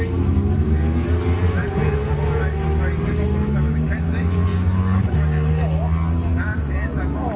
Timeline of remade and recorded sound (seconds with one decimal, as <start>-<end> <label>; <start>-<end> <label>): 0.0-7.4 recorded